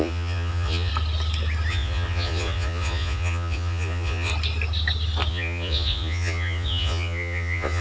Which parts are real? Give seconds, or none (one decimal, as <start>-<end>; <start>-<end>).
0.9-1.7; 4.3-5.3